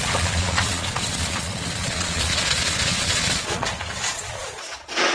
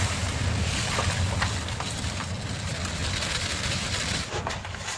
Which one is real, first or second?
second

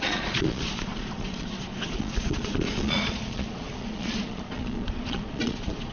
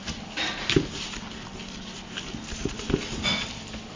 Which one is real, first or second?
second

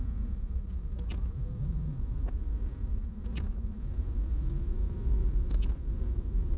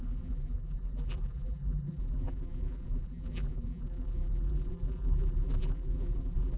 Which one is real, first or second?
first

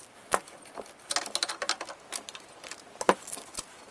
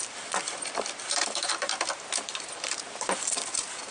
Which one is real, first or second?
first